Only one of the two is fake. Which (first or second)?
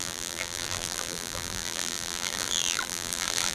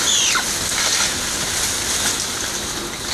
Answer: first